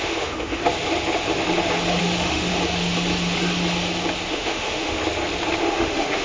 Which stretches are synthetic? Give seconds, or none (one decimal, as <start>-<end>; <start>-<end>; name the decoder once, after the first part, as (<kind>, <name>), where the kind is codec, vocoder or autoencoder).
0.0-0.6 (autoencoder, DAC-VAE); 2.0-2.5; 4.3-5.0; 5.6-6.2